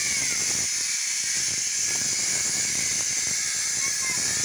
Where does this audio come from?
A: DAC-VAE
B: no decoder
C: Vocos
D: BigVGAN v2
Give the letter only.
B